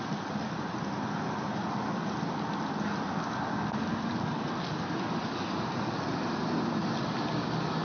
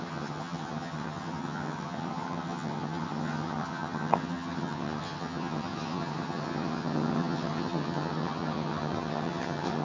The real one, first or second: first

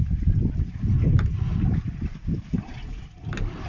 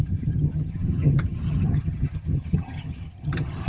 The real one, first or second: first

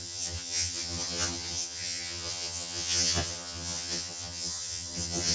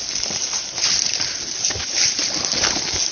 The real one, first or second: second